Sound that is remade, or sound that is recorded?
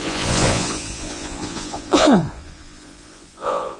remade